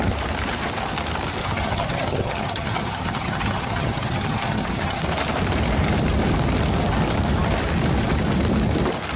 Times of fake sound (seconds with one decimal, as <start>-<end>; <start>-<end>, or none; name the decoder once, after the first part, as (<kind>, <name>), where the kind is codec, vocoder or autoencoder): 1.4-5.0 (vocoder, HiFi-GAN)